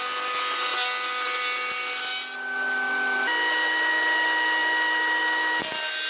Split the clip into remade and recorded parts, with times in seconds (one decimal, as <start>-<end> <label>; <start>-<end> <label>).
0.0-6.1 recorded